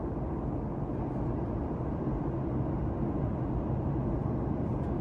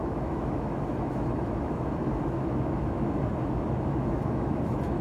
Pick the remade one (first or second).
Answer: second